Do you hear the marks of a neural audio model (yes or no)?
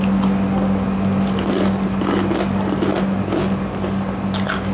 no